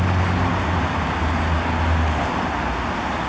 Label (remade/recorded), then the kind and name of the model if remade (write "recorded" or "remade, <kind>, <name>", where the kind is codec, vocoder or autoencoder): recorded